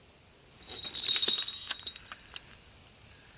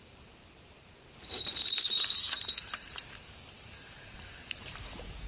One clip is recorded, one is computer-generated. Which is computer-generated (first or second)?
second